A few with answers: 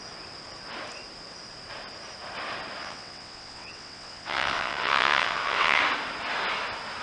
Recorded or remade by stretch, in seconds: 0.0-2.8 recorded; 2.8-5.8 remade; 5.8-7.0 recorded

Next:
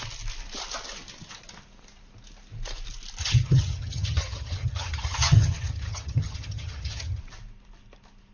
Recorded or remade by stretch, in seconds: 0.0-3.2 recorded; 3.2-7.2 remade; 7.2-8.3 recorded

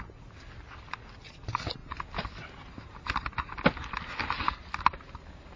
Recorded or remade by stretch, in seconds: 0.0-5.6 recorded

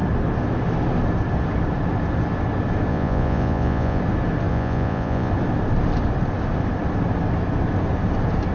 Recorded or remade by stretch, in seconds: 0.0-2.9 recorded; 2.9-4.0 remade; 4.0-4.5 recorded; 4.5-5.3 remade; 5.3-8.5 recorded

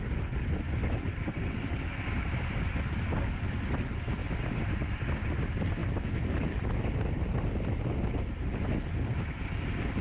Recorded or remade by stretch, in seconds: 0.0-10.0 recorded

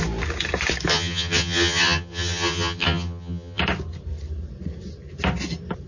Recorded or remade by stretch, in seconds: 0.0-0.9 recorded; 0.9-3.6 remade; 3.6-5.9 recorded

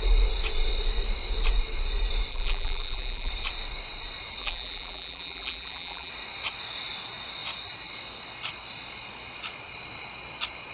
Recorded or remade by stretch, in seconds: 0.0-2.3 recorded; 2.3-3.3 remade; 3.3-4.4 recorded; 4.4-6.1 remade; 6.1-10.7 recorded